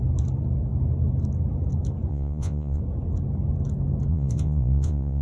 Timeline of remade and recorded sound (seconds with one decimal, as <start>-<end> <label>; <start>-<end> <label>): 0.0-2.1 recorded; 2.1-2.8 remade; 2.8-4.1 recorded; 4.1-5.2 remade